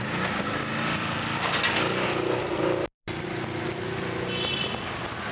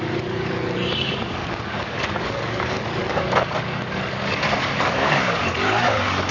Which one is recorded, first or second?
first